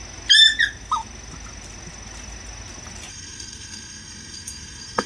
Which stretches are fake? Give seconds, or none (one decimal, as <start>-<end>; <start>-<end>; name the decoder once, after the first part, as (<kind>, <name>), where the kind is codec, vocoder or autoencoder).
3.1-5.1 (codec, SNAC)